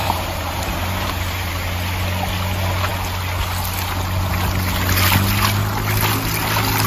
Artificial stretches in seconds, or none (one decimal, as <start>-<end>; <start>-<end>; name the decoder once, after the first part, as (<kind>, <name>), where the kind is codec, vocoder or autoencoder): 0.0-1.5 (vocoder, BigVGAN v2)